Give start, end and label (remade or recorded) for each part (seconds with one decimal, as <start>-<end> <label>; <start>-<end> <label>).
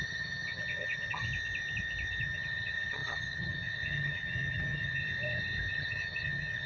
0.0-1.2 remade; 1.2-2.2 recorded; 2.2-5.0 remade; 5.0-5.7 recorded; 5.7-6.7 remade